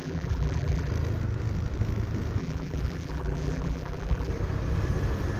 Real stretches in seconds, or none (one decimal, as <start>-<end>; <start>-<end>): 0.9-2.4; 4.3-5.4

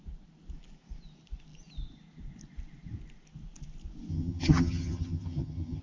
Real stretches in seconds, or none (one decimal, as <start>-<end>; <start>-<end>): 0.0-4.1

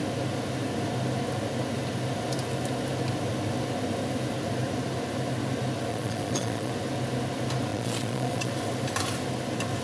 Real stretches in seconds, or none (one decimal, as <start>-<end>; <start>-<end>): 0.0-5.9; 6.7-7.7; 8.5-9.8